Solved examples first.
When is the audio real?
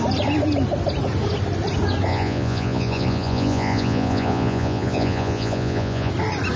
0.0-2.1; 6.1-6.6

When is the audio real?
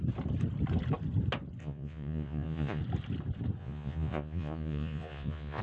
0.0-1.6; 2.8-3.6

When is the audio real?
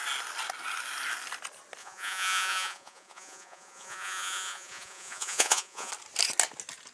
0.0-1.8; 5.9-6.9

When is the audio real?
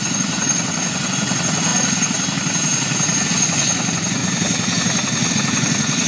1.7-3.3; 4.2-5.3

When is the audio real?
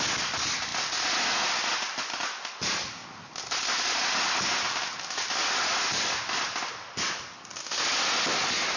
0.0-8.8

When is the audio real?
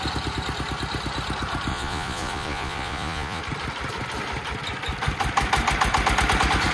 0.0-1.7; 3.4-6.7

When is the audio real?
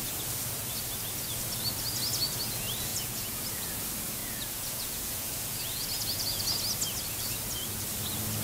0.0-2.9; 3.4-4.2; 6.6-8.4